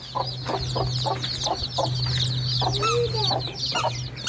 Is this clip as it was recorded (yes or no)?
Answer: yes